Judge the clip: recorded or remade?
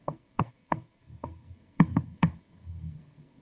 remade